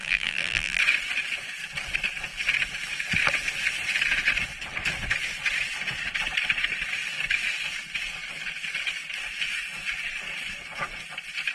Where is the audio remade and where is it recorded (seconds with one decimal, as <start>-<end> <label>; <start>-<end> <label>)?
0.0-0.8 remade; 0.8-11.5 recorded